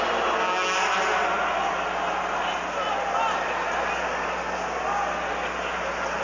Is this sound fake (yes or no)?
no